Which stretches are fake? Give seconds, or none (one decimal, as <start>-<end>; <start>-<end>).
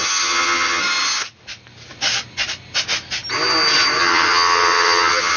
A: 0.0-0.8; 4.0-5.4